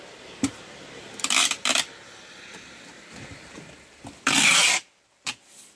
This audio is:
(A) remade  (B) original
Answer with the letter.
A